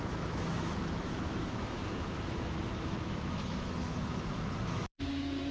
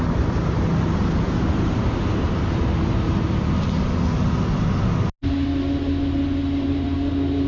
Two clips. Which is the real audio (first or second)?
second